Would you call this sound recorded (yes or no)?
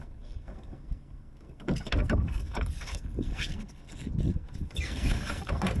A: no